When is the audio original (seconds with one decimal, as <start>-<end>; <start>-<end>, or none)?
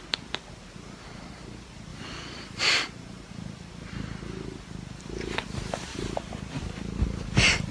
0.0-1.9; 2.6-5.9; 6.5-7.7